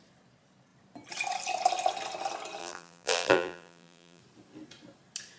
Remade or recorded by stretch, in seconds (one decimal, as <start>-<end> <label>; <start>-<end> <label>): 0.0-2.6 recorded; 2.6-4.2 remade; 4.2-5.4 recorded